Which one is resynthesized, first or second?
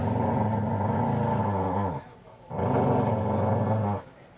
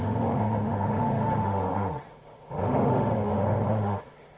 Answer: second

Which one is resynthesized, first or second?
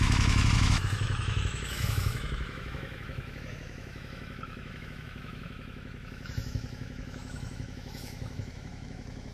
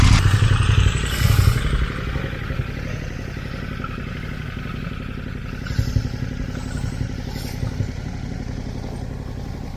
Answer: first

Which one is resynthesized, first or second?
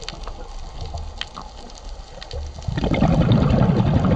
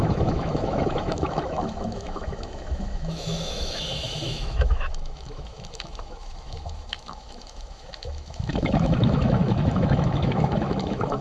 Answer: second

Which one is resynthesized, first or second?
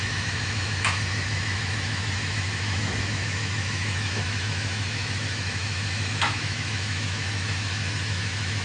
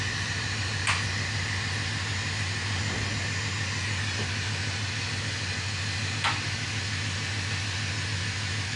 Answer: first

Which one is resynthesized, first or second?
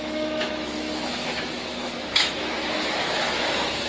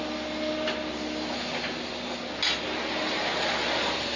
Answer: first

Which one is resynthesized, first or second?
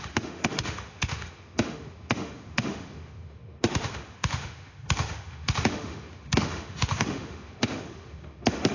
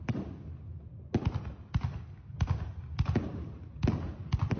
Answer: first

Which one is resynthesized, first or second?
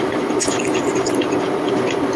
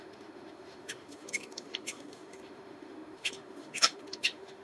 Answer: second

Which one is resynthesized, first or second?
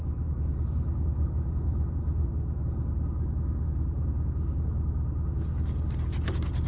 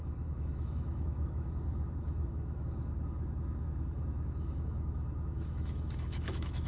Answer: second